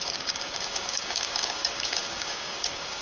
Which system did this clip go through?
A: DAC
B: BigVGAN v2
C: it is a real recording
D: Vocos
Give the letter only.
A